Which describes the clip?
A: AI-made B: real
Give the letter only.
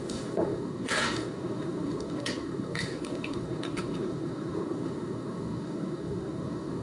A